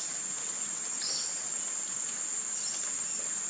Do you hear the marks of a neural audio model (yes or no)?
no